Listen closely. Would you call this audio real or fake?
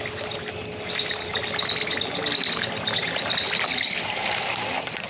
real